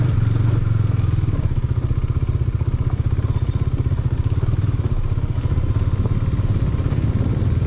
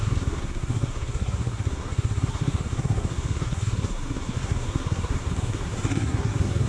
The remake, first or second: second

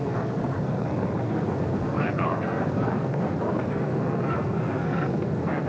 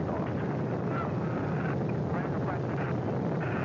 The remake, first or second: first